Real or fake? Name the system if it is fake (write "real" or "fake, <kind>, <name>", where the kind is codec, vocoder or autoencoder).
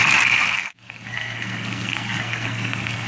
fake, codec, SNAC